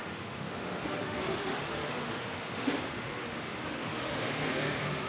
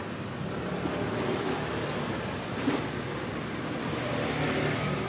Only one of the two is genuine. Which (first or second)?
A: second